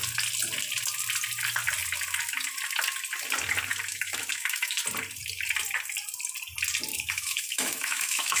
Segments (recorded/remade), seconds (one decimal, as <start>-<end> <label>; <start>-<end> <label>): 0.0-3.9 recorded; 3.9-4.8 remade; 4.8-6.9 recorded; 6.9-8.4 remade